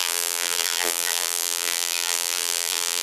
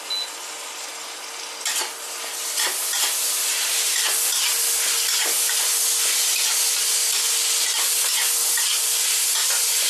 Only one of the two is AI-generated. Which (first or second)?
first